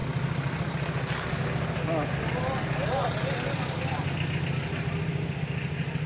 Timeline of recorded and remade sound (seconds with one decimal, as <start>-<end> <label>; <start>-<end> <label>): 0.0-6.1 recorded